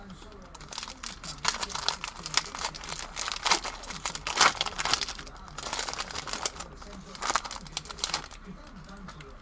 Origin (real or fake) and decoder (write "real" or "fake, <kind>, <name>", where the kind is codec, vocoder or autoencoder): real